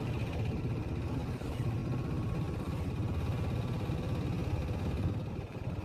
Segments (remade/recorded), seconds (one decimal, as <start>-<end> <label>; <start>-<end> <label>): 0.0-1.8 remade; 1.8-5.3 recorded; 5.3-5.8 remade